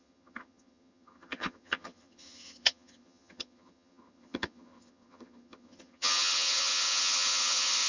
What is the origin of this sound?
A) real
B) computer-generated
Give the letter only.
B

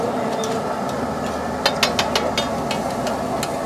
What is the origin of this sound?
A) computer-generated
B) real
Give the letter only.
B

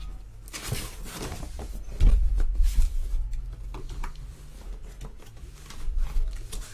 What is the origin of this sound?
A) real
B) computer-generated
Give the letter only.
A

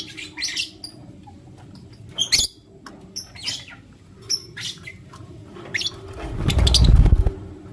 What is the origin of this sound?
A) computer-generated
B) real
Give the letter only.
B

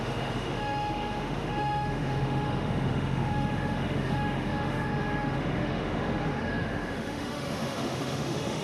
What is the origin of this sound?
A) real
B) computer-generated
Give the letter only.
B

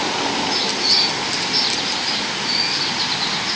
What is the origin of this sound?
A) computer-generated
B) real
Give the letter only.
B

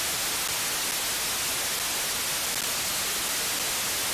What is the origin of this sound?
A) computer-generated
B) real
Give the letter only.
B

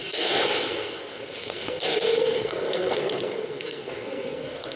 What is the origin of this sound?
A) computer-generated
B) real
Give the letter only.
A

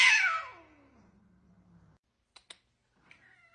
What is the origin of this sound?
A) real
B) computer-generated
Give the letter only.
A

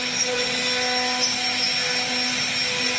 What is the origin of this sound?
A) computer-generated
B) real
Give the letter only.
B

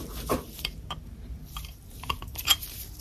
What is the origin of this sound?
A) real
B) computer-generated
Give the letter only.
B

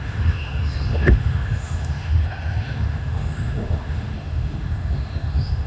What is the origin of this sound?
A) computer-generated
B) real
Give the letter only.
A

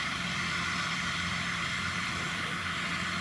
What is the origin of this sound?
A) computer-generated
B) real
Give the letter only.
A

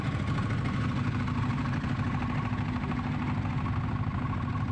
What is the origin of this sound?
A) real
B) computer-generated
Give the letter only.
A